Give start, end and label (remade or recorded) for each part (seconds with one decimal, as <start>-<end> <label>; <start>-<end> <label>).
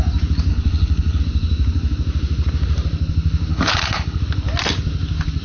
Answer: 0.0-0.5 recorded; 0.5-1.2 remade; 1.2-3.5 recorded; 3.5-4.2 remade; 4.2-5.4 recorded